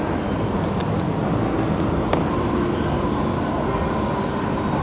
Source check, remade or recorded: recorded